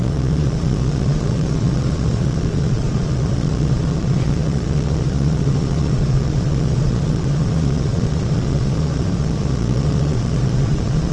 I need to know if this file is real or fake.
fake